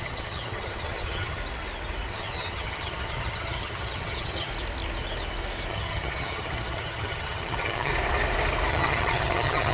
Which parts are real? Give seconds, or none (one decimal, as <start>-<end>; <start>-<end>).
1.4-2.1; 4.5-5.7; 7.9-8.7